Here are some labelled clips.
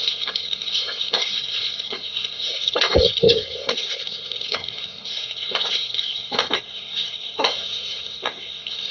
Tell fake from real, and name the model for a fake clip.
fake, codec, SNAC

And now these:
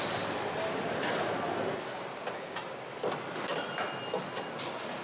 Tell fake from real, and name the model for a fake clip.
real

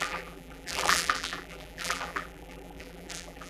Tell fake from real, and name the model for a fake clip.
fake, vocoder, BigVGAN v2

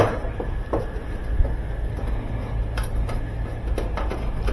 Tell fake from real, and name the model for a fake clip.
real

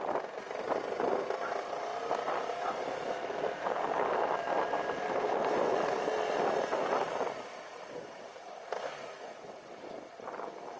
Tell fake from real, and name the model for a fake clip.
real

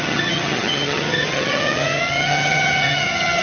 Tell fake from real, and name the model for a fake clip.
fake, vocoder, HiFi-GAN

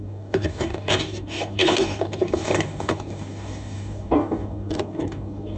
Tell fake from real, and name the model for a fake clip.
fake, codec, DAC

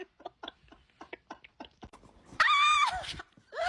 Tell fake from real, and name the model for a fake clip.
fake, vocoder, BigVGAN v2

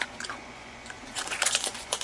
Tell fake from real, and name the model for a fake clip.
fake, vocoder, Vocos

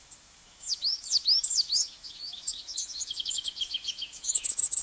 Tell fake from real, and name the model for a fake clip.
fake, autoencoder, DAC-VAE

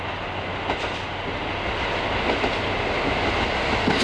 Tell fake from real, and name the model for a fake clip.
real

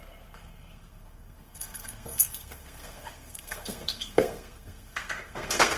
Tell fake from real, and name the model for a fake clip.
fake, codec, SNAC